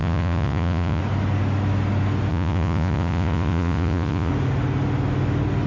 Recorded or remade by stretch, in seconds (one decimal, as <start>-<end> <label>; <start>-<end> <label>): 0.0-1.0 remade; 1.0-2.3 recorded; 2.3-4.3 remade; 4.3-5.7 recorded